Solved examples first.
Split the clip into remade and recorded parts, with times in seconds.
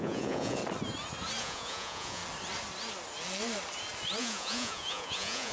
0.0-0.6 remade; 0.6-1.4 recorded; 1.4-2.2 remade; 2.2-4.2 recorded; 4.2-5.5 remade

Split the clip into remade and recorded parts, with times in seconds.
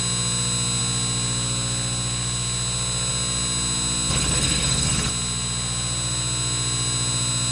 0.0-4.1 recorded; 4.1-5.1 remade; 5.1-7.5 recorded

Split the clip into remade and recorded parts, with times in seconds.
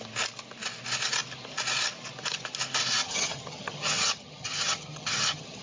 0.0-3.0 recorded; 3.0-5.6 remade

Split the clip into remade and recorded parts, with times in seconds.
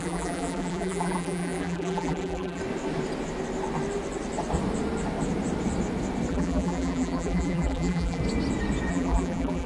0.0-2.6 remade; 2.6-6.3 recorded; 6.3-8.2 remade; 8.2-8.9 recorded; 8.9-9.7 remade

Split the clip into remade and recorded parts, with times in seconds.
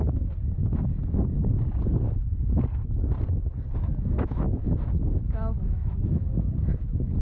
0.0-3.9 recorded; 3.9-6.5 remade; 6.5-7.2 recorded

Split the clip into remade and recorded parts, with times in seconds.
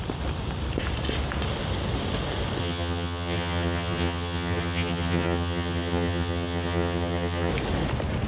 0.0-2.6 recorded; 2.6-7.5 remade; 7.5-8.3 recorded